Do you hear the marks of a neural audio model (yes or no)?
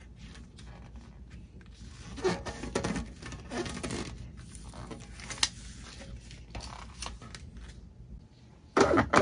no